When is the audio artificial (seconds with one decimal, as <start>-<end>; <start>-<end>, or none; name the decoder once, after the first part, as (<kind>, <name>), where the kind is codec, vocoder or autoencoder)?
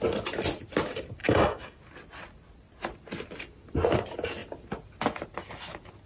1.2-1.8 (autoencoder, DAC-VAE)